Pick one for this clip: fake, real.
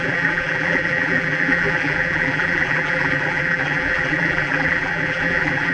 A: fake